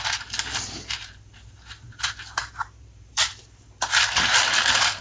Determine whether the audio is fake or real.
fake